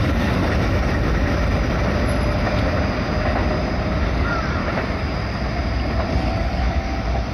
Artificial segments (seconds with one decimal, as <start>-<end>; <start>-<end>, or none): 0.0-0.4; 4.0-4.6; 6.1-7.3